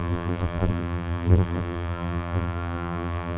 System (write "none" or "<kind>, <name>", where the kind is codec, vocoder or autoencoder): vocoder, BigVGAN v2